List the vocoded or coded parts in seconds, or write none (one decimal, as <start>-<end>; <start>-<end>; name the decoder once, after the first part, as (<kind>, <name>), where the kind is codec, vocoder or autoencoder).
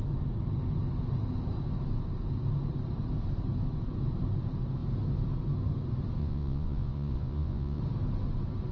6.2-7.8 (vocoder, Vocos)